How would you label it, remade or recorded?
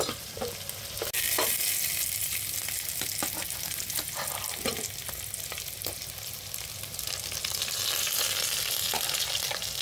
remade